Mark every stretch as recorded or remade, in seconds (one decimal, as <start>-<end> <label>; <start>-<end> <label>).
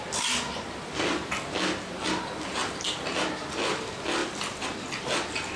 0.0-5.6 recorded